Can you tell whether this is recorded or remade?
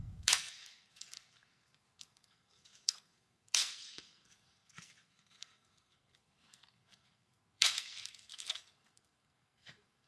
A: remade